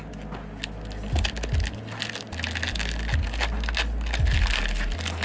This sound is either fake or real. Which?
real